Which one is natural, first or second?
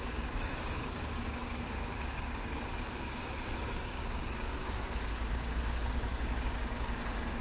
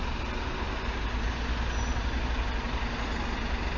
second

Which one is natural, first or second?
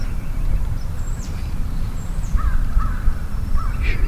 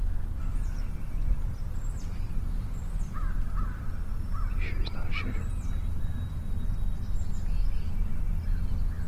second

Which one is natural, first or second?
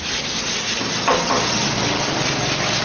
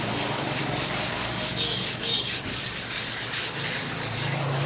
first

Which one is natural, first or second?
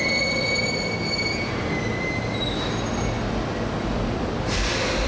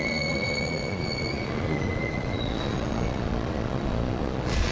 first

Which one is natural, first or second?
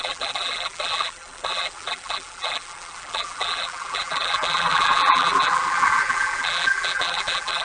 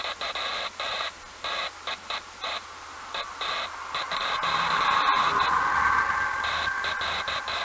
second